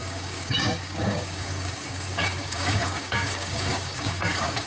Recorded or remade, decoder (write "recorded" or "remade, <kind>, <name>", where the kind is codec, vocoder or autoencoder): remade, codec, DAC